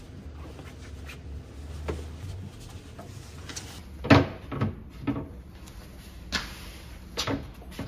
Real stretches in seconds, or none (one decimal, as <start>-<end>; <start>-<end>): 0.0-7.9